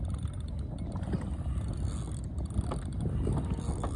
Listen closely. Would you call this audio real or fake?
real